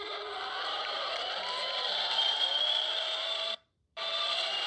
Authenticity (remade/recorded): remade